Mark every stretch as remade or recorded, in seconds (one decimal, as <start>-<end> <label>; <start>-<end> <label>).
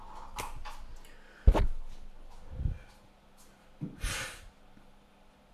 0.0-5.5 recorded